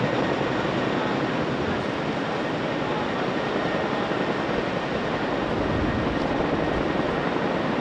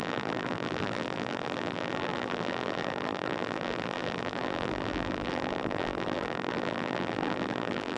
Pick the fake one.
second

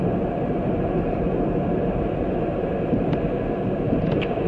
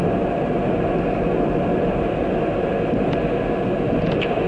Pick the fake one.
first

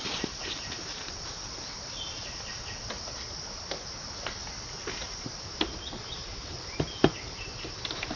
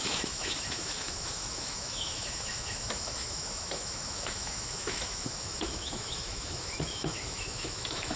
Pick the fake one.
second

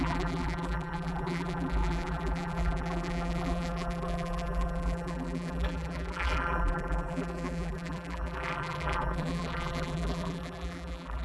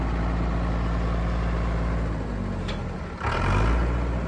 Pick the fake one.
first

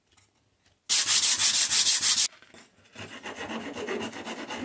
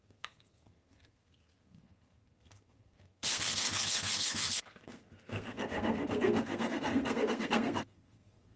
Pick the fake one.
second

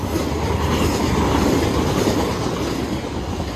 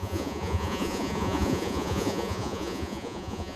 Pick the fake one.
second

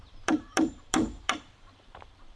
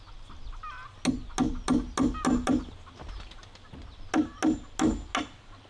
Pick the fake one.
first